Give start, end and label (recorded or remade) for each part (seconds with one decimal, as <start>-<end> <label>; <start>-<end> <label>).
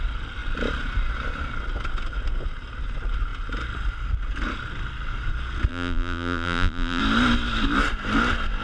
0.0-5.7 recorded; 5.7-7.0 remade; 7.0-8.6 recorded